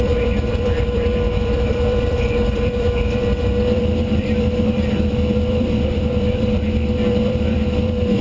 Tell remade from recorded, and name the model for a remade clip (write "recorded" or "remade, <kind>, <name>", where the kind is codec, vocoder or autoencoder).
remade, vocoder, BigVGAN v2